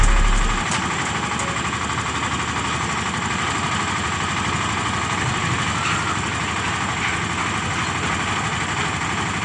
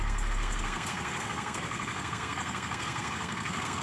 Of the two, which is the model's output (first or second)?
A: second